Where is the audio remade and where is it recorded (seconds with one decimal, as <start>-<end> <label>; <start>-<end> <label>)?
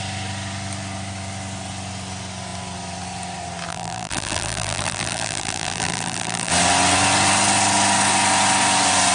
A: 0.0-3.7 recorded; 3.7-6.5 remade; 6.5-9.1 recorded